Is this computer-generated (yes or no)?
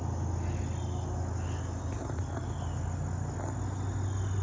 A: no